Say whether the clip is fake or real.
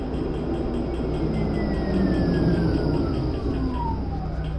real